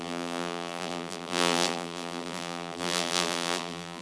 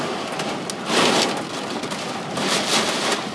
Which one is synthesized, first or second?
first